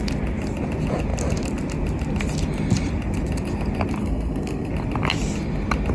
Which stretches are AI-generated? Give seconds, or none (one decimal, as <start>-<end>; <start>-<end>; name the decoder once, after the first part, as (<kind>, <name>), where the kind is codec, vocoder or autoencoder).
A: 4.0-4.7 (codec, SNAC)